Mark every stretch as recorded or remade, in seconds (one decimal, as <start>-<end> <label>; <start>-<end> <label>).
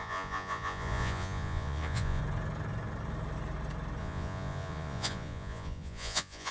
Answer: 0.0-2.2 remade; 2.2-4.0 recorded; 4.0-6.5 remade